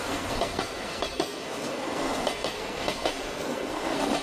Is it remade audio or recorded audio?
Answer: remade